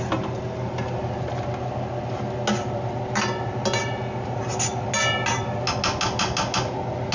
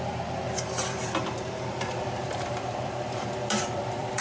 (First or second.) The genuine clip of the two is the first